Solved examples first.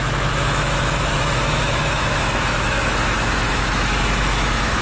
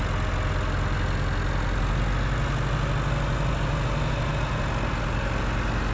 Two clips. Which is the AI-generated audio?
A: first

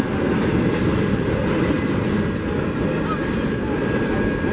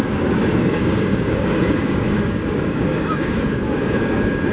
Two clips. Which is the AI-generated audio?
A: second